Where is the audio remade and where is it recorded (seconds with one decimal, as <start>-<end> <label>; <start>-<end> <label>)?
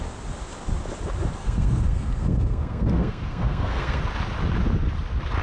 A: 0.0-1.4 recorded; 1.4-4.0 remade; 4.0-5.4 recorded